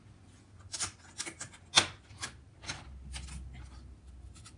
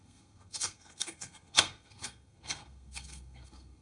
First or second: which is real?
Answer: first